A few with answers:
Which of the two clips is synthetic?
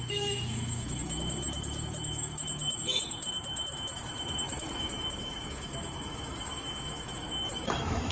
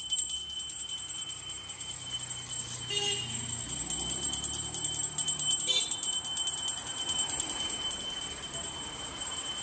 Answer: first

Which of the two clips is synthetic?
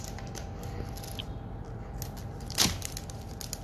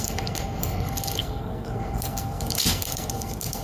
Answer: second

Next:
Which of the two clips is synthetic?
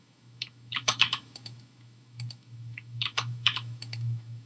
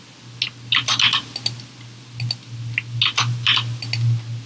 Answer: first